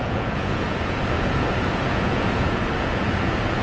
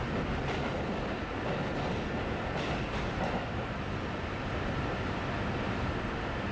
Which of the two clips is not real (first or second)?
first